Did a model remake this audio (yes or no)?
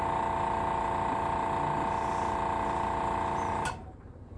no